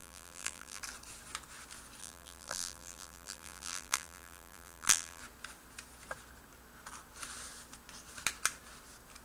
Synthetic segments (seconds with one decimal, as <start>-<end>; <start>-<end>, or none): 0.0-0.8; 2.0-5.2